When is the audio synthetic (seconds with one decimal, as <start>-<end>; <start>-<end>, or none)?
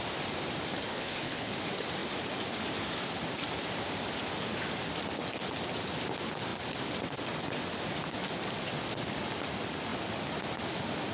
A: 0.9-1.5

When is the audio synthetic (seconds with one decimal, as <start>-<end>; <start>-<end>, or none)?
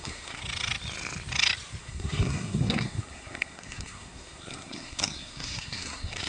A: 0.0-0.4; 1.8-6.3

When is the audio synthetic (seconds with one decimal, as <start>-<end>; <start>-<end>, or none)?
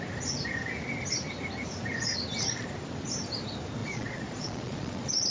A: 3.8-5.3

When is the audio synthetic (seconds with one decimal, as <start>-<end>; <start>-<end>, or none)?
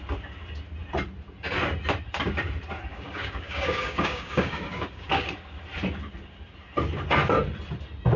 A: 2.9-5.3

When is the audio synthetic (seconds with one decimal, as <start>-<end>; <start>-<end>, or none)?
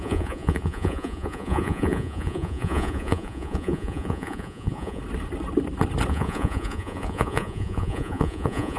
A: 0.0-5.0; 6.1-8.8